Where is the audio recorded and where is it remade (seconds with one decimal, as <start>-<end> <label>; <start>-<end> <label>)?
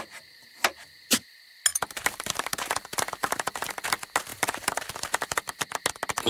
0.0-1.7 recorded; 1.7-3.7 remade; 3.7-4.3 recorded; 4.3-4.9 remade; 4.9-6.3 recorded